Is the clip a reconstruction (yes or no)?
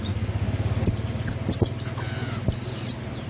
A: no